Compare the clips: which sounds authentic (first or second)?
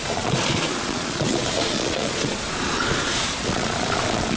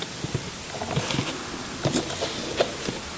second